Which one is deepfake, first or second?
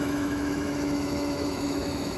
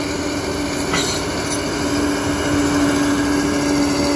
first